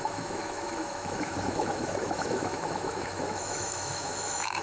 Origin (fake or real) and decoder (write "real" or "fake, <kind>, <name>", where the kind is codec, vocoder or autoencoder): fake, autoencoder, DAC-VAE